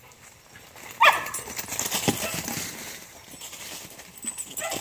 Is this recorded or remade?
remade